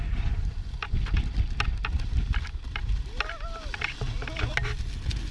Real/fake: real